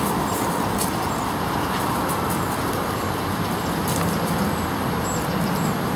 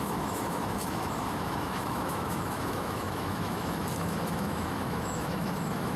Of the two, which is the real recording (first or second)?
first